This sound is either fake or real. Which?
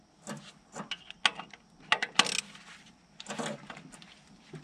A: real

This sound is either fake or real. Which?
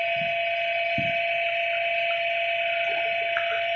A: real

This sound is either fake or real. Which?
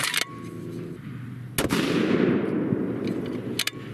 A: real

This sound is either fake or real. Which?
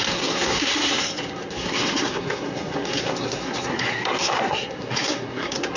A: fake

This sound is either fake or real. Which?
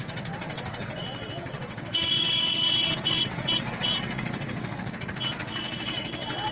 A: fake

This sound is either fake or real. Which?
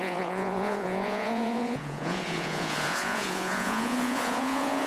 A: fake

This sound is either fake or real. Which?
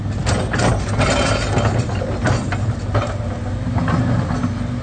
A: real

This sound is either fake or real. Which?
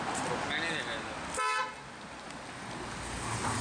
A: real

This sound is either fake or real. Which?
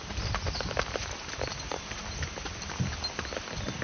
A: real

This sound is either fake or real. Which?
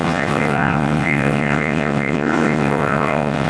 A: fake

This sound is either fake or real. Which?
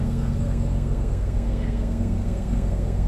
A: fake